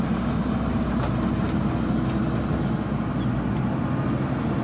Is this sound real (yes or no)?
yes